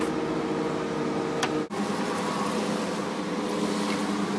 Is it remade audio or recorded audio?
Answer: recorded